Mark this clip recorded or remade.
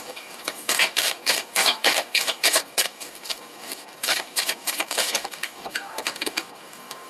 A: remade